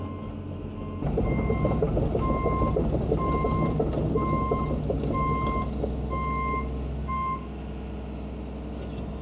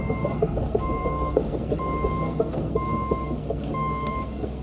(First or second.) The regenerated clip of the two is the second